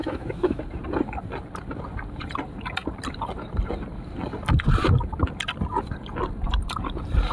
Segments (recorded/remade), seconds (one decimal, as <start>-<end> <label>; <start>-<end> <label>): 0.0-0.6 remade; 0.6-7.3 recorded